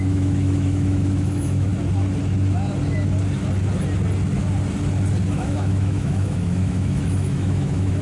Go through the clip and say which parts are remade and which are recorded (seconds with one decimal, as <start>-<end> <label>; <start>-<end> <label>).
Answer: 0.0-1.7 remade; 1.7-5.3 recorded; 5.3-8.0 remade